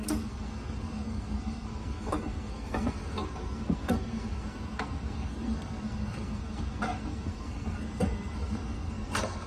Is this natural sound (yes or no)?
no